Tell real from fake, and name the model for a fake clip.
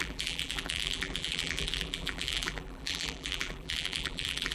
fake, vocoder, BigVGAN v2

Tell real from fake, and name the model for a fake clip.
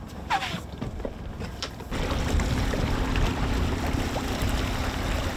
fake, vocoder, BigVGAN v2